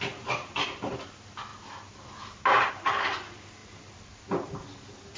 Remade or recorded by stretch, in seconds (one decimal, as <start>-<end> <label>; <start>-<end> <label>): 0.0-5.2 recorded